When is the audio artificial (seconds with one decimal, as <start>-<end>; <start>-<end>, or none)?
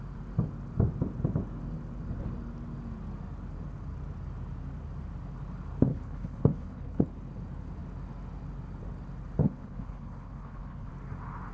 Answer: 5.9-7.0; 9.4-10.9